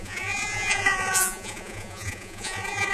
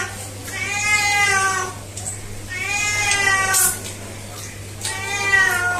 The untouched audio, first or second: second